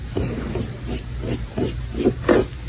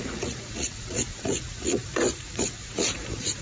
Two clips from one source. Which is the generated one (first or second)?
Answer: second